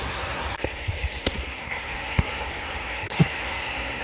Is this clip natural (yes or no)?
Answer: no